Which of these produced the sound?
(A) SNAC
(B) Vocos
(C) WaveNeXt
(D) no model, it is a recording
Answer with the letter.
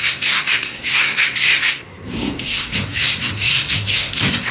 A